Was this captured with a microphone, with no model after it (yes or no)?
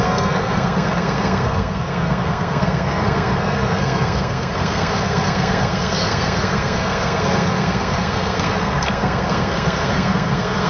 no